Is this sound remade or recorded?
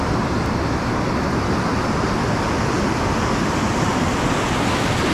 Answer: recorded